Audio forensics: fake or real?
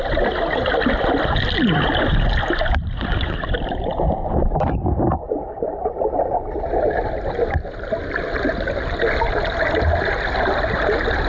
real